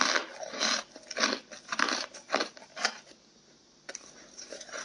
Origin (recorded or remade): recorded